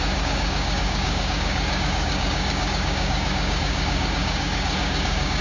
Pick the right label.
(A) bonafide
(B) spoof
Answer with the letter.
B